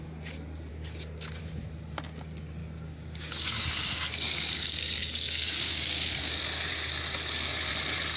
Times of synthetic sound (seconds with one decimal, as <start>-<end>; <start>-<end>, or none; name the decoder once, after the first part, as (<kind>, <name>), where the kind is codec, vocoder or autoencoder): 0.7-1.4 (codec, DAC); 2.6-6.3